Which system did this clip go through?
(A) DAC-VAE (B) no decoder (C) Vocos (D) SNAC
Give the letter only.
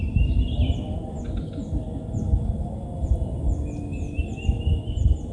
B